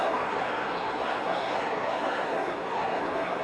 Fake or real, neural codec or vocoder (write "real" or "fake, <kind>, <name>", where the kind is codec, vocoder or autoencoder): fake, codec, SNAC